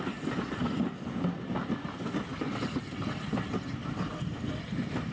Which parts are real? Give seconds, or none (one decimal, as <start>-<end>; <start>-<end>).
0.0-5.1